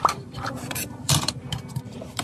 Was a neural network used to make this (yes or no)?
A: yes